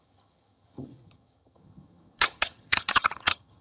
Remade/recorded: remade